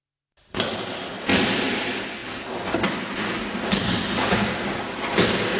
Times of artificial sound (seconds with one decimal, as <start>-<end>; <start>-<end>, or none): none

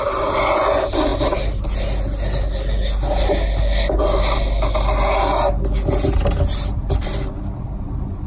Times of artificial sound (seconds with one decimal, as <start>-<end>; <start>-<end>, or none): 6.7-7.4

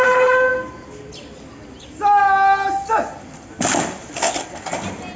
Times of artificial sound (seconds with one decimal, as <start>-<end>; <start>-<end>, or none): none

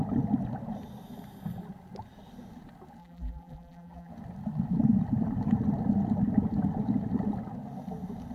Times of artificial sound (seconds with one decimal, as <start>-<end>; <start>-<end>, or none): 3.0-4.1

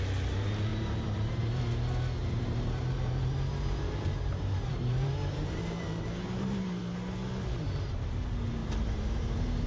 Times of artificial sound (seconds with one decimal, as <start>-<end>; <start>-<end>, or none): 0.7-1.6; 2.2-6.8; 8.6-9.7

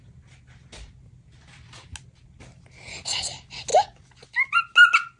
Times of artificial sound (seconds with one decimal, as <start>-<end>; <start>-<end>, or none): none

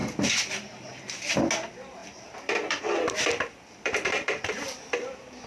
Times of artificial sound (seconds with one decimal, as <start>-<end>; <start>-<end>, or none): 2.0-5.5